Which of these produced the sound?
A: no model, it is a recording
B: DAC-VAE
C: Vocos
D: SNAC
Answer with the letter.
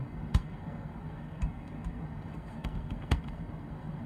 D